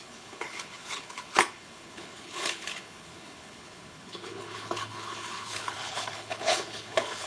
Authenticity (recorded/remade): remade